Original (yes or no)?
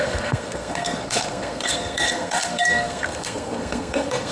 no